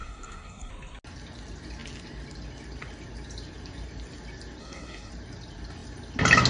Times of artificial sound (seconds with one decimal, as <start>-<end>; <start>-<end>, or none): 0.0-0.7; 4.6-5.1

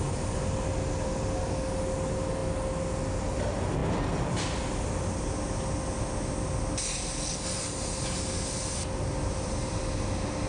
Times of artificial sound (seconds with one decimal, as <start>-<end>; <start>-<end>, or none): none

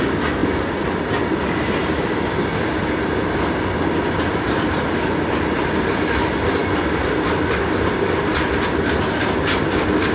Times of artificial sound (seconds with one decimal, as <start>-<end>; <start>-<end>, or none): none

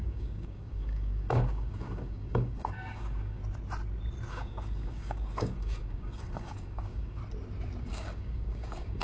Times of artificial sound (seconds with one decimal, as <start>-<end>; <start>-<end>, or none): 0.0-3.4; 4.3-7.2; 7.8-9.0